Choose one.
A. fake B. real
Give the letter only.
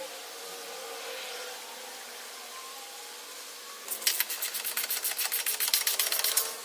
B